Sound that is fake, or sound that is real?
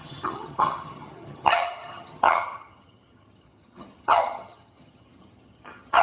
fake